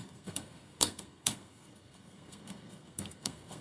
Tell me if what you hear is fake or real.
fake